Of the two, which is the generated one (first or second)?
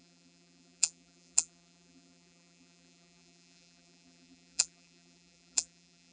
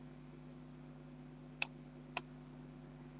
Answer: first